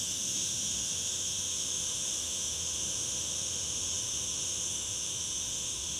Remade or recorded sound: remade